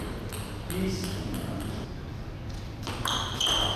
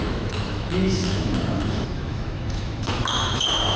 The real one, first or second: first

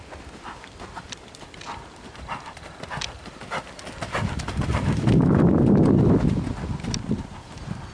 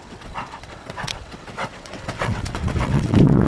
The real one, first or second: first